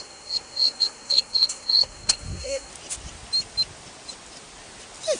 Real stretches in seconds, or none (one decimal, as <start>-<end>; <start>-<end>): 2.7-5.2